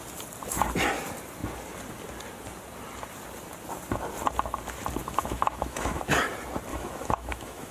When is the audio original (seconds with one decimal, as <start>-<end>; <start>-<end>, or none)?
0.0-5.0; 6.0-6.7